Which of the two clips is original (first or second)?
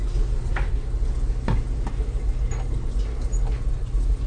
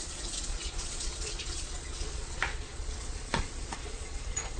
first